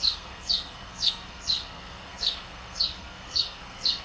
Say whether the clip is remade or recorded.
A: remade